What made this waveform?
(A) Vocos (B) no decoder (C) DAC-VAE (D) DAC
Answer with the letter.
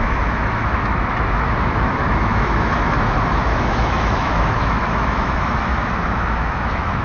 C